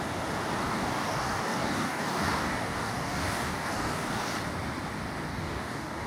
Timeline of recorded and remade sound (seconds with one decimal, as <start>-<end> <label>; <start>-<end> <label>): 0.0-0.6 recorded; 0.6-4.3 remade; 4.3-5.3 recorded; 5.3-6.1 remade